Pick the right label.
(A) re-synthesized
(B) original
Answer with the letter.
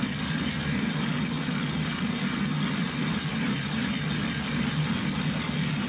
B